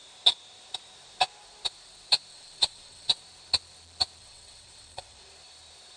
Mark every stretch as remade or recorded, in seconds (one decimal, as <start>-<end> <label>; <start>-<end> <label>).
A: 0.0-2.3 recorded; 2.3-3.2 remade; 3.2-4.2 recorded; 4.2-5.3 remade; 5.3-6.0 recorded